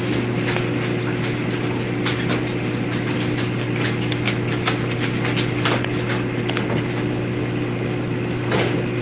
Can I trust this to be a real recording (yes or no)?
yes